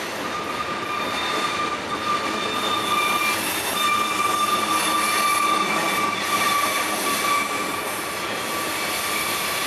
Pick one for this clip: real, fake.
real